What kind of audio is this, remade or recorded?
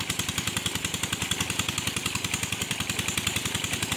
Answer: remade